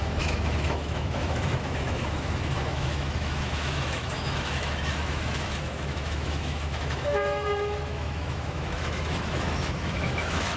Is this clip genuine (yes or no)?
no